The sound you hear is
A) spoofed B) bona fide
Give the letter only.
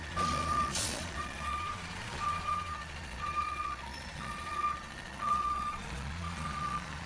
A